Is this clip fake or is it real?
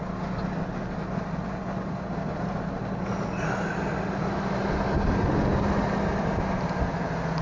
real